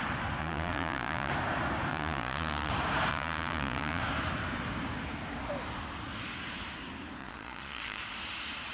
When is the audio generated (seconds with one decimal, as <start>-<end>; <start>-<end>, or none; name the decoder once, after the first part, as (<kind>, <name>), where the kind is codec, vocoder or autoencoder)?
0.4-1.3 (vocoder, Vocos); 1.9-2.7; 3.1-4.0; 7.2-8.0